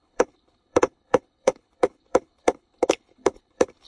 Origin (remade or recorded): remade